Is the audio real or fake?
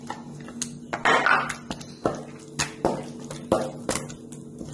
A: real